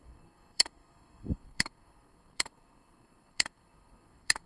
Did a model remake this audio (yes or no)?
yes